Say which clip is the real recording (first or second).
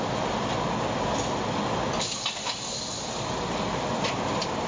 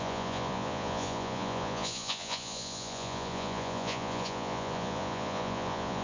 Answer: first